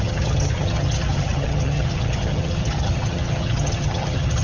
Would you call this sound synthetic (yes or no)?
yes